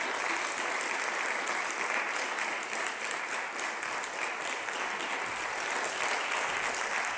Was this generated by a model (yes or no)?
no